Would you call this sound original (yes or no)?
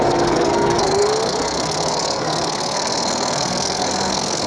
no